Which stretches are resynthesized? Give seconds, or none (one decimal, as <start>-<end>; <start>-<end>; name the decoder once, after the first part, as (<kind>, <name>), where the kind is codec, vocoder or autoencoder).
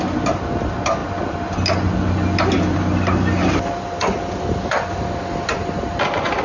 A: none